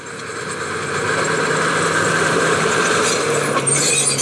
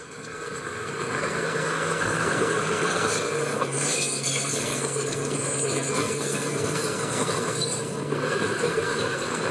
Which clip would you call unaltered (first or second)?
first